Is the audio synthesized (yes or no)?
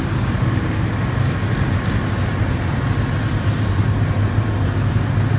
no